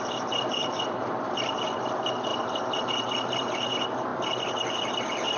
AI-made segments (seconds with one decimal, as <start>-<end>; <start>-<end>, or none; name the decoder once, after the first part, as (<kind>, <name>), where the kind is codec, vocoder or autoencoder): 0.6-1.9 (vocoder, BigVGAN v2)